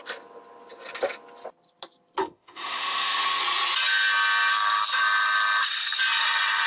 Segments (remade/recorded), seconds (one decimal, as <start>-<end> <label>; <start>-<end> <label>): 0.0-2.2 recorded; 2.2-3.4 remade; 3.4-6.7 recorded